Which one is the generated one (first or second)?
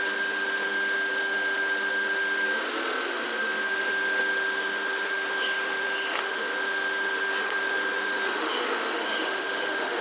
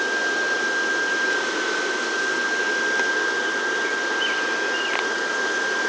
first